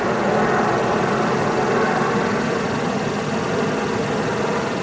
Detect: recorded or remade recorded